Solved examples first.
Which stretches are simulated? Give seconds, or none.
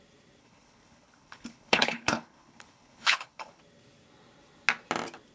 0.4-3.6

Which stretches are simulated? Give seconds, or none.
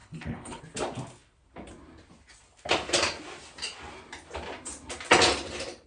0.0-0.6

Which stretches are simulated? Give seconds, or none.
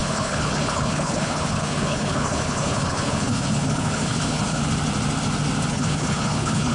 0.0-4.6; 5.7-6.7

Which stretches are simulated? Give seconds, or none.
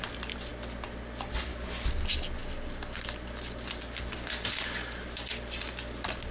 none